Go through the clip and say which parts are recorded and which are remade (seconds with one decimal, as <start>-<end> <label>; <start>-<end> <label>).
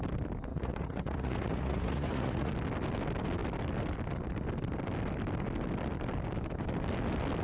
0.0-0.5 recorded; 0.5-2.5 remade; 2.5-7.4 recorded